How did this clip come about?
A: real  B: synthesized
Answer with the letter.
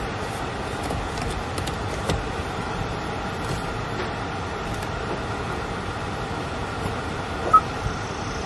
A